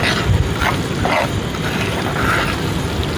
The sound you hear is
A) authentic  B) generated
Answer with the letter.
A